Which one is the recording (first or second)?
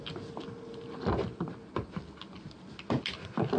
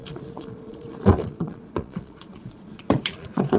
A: first